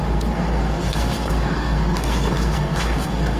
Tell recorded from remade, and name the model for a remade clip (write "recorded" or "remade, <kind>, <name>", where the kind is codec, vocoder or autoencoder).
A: remade, codec, SNAC